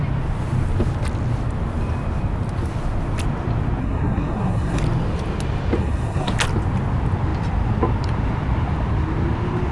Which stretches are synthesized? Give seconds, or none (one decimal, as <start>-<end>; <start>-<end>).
3.8-4.8; 5.8-6.3